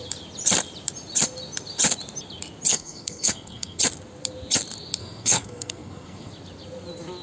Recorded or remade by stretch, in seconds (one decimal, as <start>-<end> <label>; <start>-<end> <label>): 0.0-2.7 recorded; 2.7-3.8 remade; 3.8-5.0 recorded; 5.0-6.3 remade; 6.3-7.2 recorded